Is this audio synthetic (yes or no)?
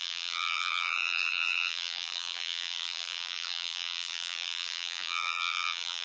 yes